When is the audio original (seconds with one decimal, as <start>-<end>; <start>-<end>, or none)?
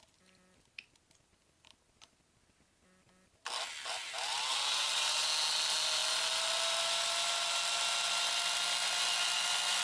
0.0-9.8